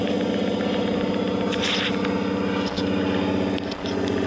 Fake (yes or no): no